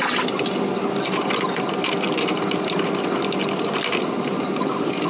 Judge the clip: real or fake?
real